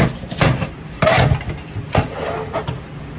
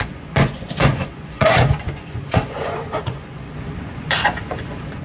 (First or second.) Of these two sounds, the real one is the first